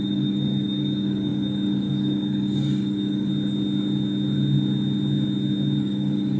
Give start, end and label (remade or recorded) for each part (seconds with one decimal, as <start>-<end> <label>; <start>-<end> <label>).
0.0-3.3 remade; 3.3-5.8 recorded; 5.8-6.4 remade